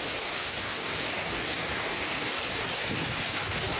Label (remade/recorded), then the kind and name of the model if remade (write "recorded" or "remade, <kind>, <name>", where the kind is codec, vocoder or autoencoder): remade, codec, DAC